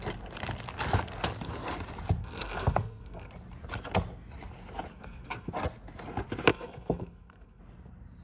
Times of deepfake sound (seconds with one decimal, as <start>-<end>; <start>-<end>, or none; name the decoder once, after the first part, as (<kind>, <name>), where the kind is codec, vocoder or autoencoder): 2.2-3.3 (codec, SNAC); 4.9-5.5; 6.5-7.6